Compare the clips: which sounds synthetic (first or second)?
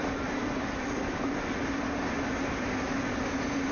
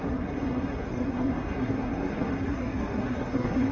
second